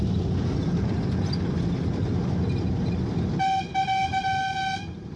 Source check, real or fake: real